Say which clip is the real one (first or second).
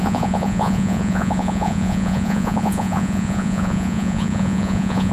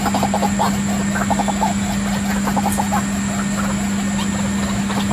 second